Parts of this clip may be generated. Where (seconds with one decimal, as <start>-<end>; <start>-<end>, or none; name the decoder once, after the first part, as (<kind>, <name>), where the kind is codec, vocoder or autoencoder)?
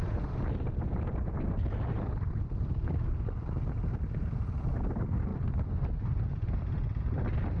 none